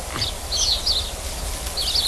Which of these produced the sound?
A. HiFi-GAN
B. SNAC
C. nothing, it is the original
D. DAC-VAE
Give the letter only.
C